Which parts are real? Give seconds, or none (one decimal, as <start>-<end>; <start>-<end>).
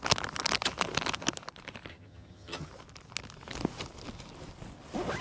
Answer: 0.0-1.9; 2.7-5.2